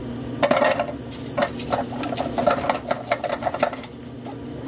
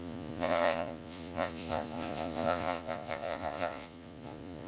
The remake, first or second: second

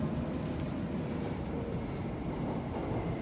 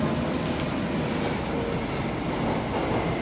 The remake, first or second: first